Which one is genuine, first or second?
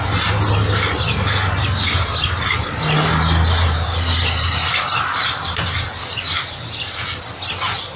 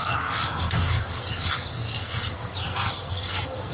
first